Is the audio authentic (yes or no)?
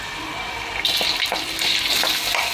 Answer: yes